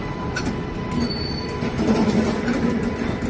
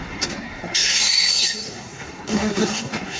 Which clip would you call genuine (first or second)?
first